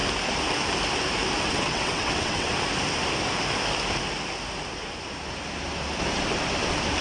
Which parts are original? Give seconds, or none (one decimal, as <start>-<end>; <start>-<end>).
0.0-1.5; 2.5-7.0